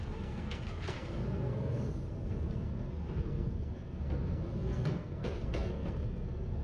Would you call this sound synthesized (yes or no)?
yes